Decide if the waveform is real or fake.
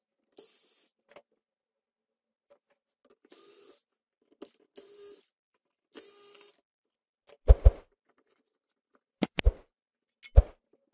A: real